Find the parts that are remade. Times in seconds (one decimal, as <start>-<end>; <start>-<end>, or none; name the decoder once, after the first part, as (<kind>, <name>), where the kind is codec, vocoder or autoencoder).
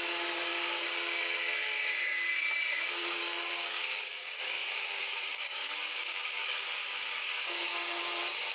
0.0-7.7 (codec, DAC)